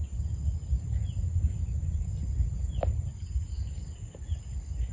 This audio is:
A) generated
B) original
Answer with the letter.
B